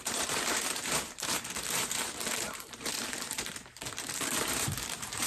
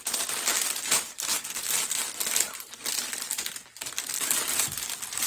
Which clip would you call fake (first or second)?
first